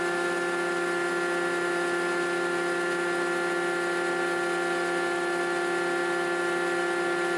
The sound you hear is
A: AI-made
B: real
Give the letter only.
B